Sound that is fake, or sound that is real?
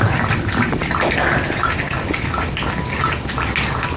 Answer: real